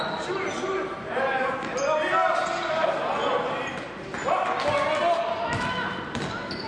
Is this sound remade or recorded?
recorded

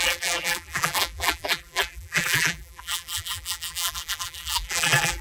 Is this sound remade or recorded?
remade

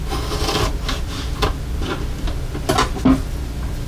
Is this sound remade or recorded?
recorded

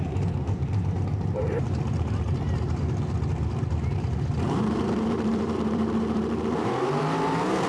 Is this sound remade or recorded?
remade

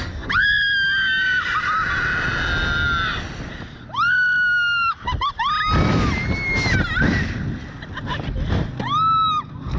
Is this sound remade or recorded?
recorded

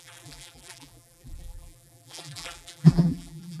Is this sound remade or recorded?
remade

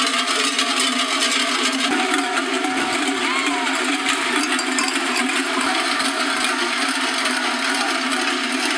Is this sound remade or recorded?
recorded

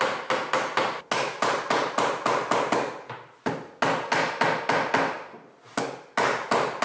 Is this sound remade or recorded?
recorded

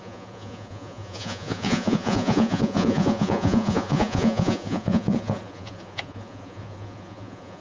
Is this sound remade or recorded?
remade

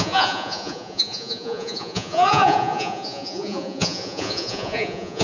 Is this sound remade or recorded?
remade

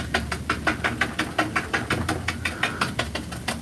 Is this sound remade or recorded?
recorded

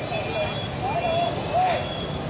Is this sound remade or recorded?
recorded